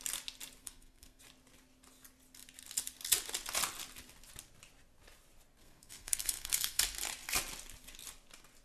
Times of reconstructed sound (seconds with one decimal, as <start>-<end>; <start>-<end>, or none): 0.6-1.2; 5.6-6.8